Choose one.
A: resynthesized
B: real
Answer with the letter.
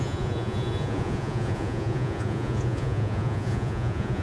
A